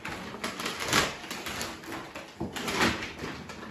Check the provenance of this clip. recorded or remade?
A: recorded